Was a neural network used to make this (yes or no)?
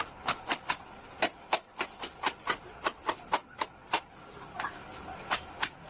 no